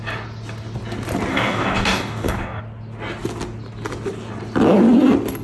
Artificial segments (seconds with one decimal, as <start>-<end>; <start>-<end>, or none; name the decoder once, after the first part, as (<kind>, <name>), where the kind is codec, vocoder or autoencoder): 1.3-2.6 (codec, DAC)